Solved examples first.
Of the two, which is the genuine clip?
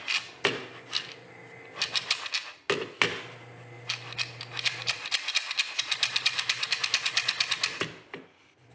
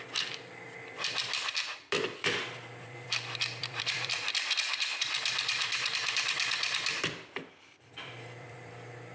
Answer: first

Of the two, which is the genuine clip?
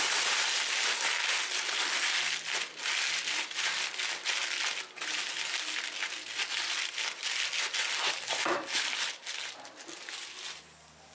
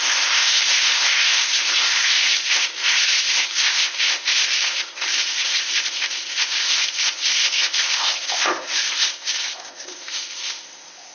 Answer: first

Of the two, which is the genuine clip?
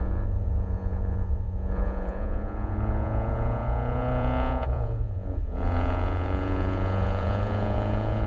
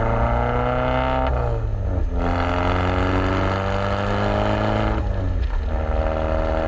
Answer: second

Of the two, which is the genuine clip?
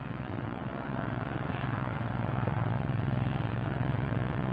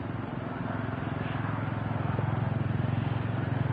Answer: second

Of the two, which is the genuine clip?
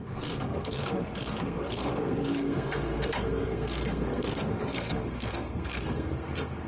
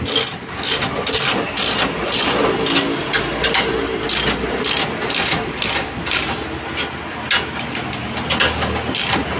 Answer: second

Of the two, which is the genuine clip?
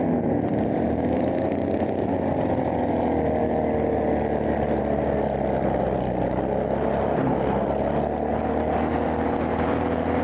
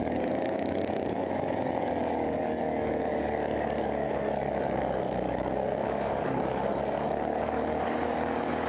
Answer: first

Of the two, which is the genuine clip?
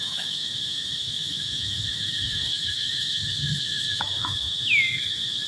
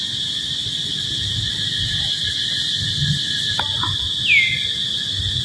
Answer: second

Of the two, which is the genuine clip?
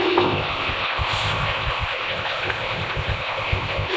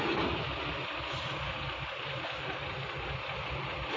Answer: second